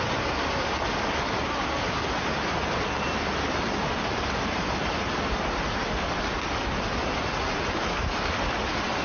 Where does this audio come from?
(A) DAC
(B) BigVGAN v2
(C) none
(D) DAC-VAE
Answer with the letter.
C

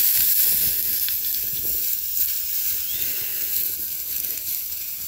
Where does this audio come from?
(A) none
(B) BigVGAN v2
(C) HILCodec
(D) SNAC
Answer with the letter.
A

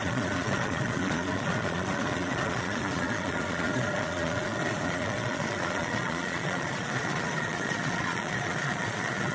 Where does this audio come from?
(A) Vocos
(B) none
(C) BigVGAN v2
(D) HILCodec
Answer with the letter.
A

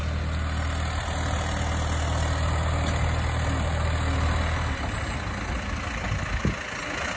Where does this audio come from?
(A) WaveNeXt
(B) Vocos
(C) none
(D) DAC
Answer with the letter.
C